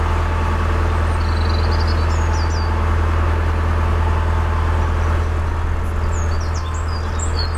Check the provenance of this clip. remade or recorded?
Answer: recorded